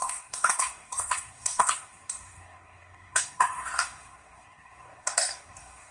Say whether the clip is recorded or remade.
remade